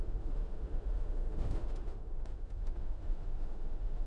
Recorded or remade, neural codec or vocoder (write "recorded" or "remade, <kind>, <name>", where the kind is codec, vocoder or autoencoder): remade, autoencoder, DAC-VAE